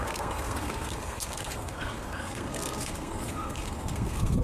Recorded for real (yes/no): no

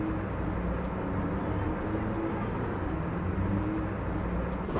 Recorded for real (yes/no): yes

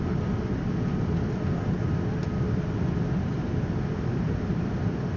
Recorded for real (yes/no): yes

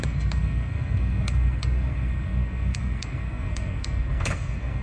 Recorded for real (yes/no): no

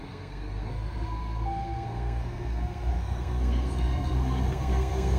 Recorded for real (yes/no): no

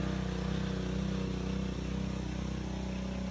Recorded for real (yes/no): yes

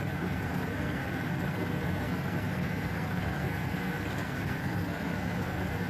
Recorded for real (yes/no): no